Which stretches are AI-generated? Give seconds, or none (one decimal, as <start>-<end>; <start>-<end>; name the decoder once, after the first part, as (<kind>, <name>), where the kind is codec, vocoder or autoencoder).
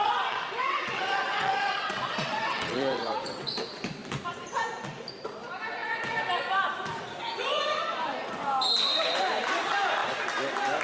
0.0-3.4 (vocoder, WaveNeXt)